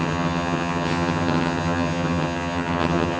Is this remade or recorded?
remade